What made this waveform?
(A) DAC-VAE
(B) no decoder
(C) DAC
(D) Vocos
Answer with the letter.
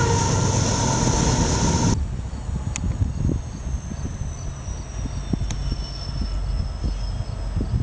B